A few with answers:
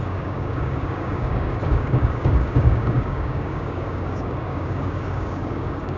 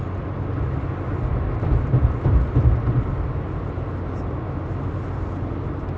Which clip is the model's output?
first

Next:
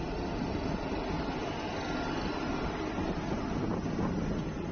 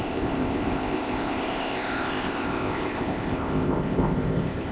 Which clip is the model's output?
second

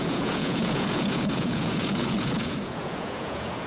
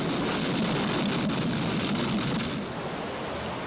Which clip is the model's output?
first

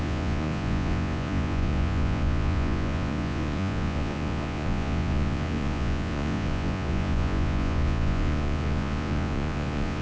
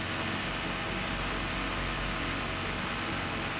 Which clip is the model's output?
first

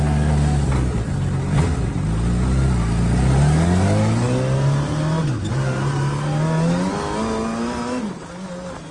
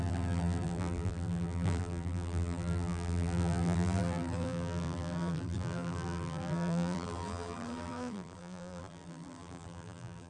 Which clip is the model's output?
second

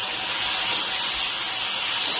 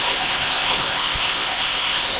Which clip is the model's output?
second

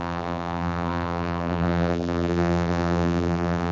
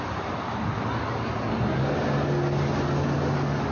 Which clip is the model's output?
first